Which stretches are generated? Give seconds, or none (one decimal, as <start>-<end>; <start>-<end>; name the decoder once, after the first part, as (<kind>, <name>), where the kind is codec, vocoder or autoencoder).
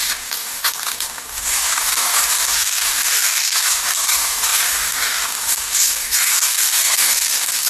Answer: 0.0-7.7 (codec, DAC)